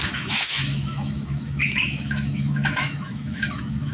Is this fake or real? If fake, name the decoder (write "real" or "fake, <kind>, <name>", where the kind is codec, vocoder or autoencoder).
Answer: fake, autoencoder, DAC-VAE